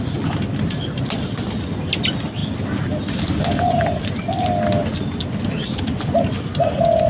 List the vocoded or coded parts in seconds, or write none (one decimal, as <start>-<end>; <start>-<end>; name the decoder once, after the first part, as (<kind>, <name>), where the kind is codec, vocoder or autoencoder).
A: none